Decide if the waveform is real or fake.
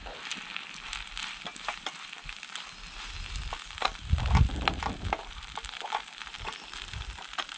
real